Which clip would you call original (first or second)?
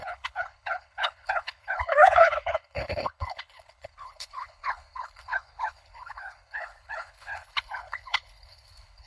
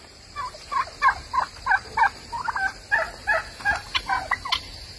second